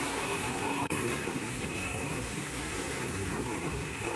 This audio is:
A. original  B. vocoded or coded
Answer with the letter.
B